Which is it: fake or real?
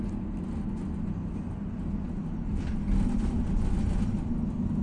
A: real